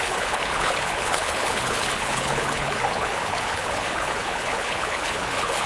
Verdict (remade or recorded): remade